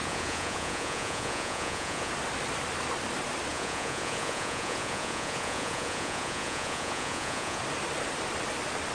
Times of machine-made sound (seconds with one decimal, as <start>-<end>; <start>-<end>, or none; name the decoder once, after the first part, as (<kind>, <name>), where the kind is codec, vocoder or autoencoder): 0.0-2.1 (vocoder, Vocos); 3.5-7.6